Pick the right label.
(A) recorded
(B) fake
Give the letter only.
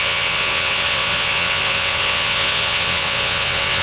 B